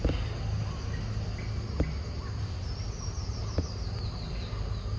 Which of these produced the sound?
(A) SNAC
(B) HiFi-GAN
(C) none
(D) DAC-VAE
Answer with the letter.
C